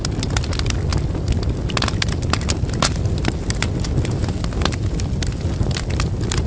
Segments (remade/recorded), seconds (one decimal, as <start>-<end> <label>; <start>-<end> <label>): 0.0-6.5 recorded